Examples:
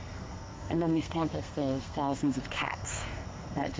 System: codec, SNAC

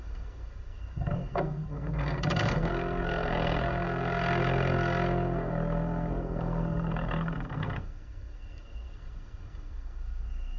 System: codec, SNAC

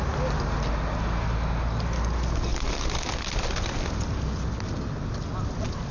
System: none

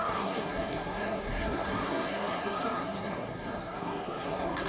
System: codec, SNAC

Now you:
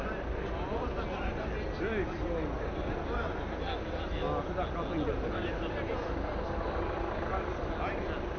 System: none